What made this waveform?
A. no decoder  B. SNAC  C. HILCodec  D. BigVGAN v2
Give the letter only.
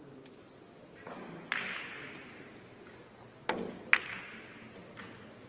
A